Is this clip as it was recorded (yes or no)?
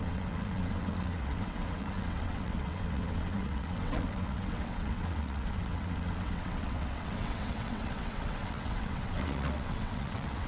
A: no